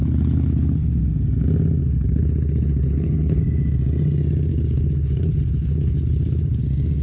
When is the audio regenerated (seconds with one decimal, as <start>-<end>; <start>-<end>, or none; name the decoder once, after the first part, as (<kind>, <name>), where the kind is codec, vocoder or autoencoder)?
0.0-1.0 (codec, HILCodec); 1.8-3.4; 4.5-6.6